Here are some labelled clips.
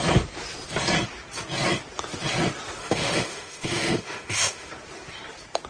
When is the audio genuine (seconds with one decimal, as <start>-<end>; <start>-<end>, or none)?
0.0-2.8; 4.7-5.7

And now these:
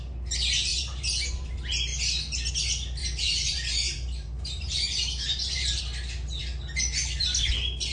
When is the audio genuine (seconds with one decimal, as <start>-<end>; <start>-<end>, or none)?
0.0-0.7; 1.3-3.0; 5.8-7.9

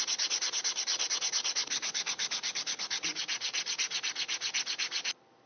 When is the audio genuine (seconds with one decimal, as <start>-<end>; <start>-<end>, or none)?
0.0-5.5

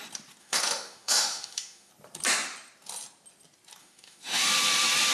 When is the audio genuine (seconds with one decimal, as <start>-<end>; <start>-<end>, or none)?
0.0-0.4; 1.9-3.8; 4.5-5.1

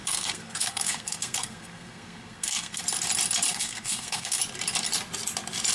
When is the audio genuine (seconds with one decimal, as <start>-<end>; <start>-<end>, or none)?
2.8-3.5; 4.4-5.7